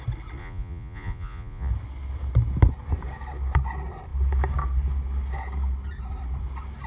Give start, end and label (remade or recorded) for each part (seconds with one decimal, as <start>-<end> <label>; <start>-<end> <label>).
0.0-0.4 recorded; 0.4-1.7 remade; 1.7-6.9 recorded